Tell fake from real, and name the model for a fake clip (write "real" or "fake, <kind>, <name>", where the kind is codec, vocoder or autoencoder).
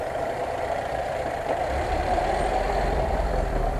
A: fake, vocoder, BigVGAN v2